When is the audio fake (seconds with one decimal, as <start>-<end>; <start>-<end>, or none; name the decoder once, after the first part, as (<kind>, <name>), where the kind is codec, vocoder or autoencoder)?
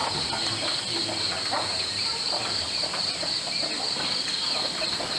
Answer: none